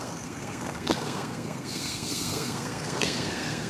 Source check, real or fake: fake